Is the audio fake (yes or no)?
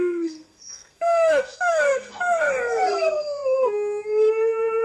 yes